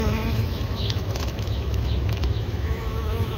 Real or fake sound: fake